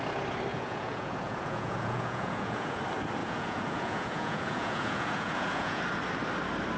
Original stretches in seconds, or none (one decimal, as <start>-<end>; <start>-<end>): 0.0-0.5; 2.8-3.2; 5.8-6.8